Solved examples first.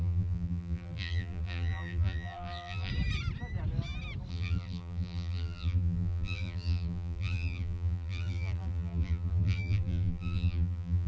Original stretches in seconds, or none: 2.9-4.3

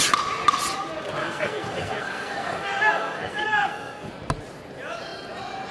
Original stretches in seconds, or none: 0.0-1.2; 4.1-5.7

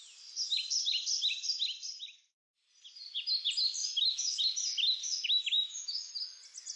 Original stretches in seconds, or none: 0.0-3.8; 4.4-5.0; 6.1-6.8

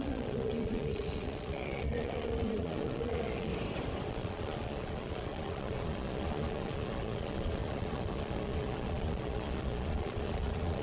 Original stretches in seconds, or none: 3.5-4.1

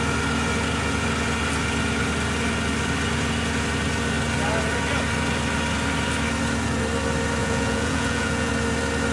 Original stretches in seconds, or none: 0.0-7.4; 8.5-9.1